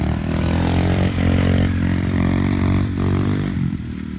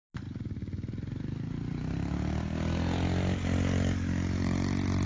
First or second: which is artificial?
first